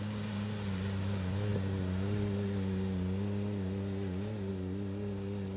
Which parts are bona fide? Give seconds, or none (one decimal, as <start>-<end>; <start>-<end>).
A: 0.0-5.6